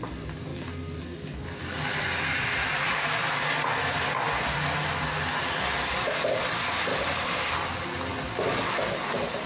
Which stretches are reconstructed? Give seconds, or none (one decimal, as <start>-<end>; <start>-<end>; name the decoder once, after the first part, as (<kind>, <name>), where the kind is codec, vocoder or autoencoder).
none